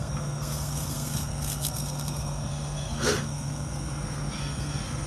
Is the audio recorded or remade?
remade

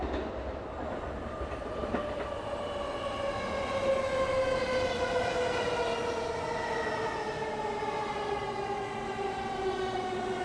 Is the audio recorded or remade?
recorded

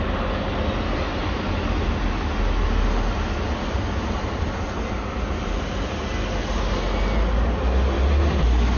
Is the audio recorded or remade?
recorded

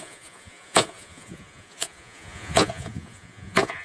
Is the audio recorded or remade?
remade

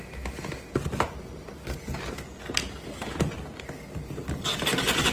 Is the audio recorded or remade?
recorded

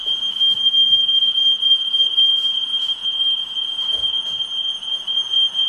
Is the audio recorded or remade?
remade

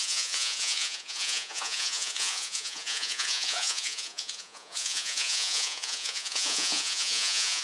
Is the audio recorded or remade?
remade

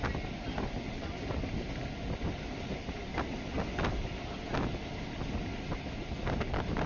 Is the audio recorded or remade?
recorded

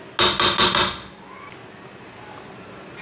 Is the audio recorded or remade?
recorded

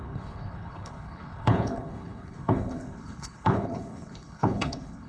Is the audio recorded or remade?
remade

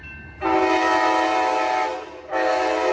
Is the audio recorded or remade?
recorded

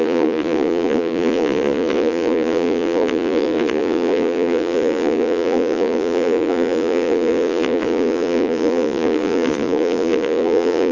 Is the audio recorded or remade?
remade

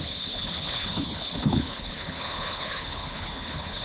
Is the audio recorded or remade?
remade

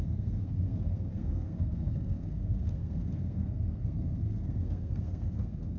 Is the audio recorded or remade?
remade